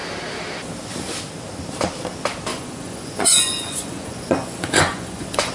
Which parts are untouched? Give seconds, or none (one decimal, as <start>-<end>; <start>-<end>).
0.0-2.5